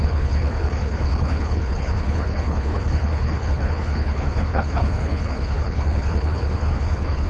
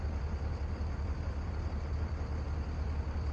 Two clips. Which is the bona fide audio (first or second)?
second